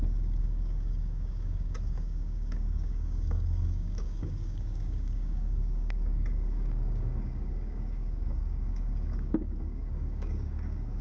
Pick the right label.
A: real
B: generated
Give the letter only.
B